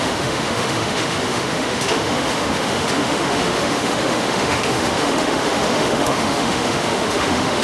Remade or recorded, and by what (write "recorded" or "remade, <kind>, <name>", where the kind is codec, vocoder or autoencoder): remade, autoencoder, DAC-VAE